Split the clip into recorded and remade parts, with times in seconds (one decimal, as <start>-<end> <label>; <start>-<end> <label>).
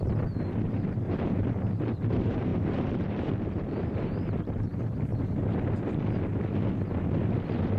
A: 0.0-5.1 remade; 5.1-7.8 recorded